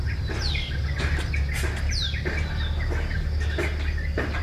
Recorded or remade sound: recorded